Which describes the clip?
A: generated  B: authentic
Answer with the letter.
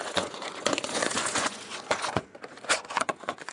A